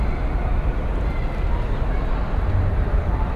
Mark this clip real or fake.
real